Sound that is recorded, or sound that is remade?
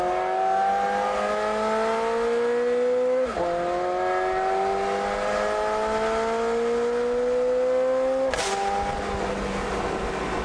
recorded